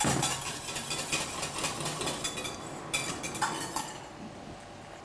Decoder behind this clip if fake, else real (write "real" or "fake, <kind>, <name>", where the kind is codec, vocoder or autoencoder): real